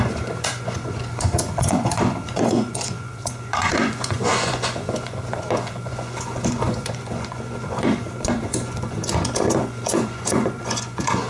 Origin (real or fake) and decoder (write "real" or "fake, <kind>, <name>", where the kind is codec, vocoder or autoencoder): fake, vocoder, Vocos